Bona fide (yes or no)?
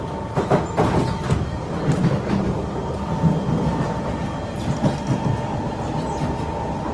yes